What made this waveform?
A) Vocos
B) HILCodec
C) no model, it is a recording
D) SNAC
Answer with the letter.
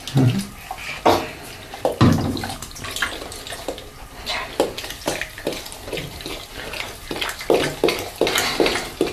C